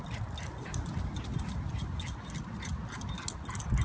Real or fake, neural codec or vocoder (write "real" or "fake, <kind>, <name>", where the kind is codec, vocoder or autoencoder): real